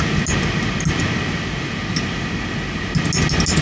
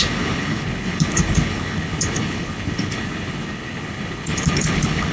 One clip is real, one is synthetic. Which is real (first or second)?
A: first